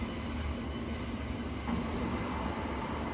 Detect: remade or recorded recorded